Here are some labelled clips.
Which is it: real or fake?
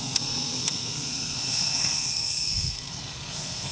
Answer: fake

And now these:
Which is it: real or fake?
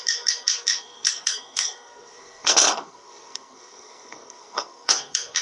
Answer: fake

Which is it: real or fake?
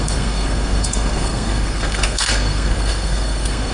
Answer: fake